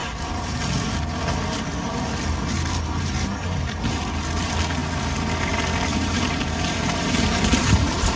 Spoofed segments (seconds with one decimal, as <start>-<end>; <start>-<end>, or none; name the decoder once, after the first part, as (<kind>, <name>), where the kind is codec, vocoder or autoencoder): 0.0-0.6 (vocoder, BigVGAN v2); 5.9-8.2